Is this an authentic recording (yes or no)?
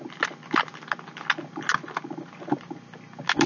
yes